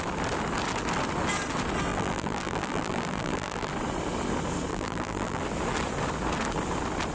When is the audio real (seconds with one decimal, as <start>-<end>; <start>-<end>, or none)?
0.0-1.9; 3.7-4.7; 5.4-7.1